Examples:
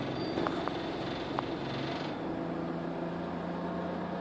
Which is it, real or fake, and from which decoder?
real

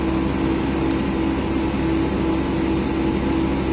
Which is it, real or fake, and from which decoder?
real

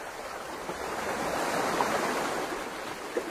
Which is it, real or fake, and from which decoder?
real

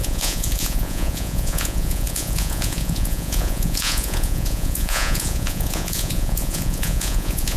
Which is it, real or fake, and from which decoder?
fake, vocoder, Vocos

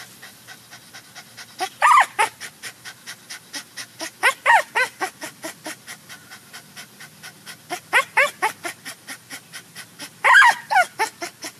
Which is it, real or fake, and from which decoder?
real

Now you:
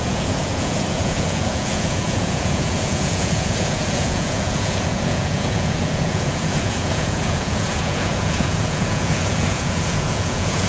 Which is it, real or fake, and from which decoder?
fake, vocoder, Vocos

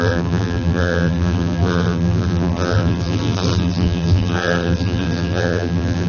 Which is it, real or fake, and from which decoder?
fake, vocoder, BigVGAN v2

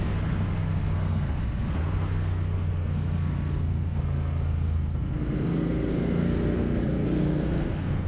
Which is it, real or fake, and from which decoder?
fake, codec, SNAC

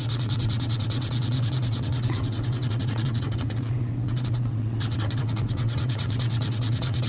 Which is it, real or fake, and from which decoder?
fake, vocoder, WaveNeXt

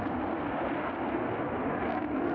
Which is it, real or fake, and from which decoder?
real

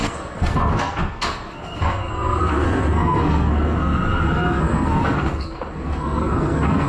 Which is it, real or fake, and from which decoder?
fake, codec, SNAC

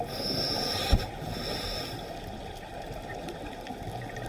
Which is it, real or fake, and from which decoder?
real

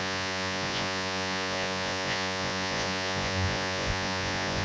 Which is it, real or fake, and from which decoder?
fake, vocoder, Vocos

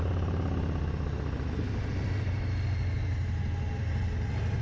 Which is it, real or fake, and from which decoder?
real